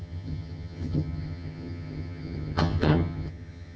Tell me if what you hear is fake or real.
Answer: fake